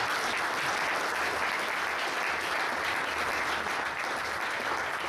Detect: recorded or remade recorded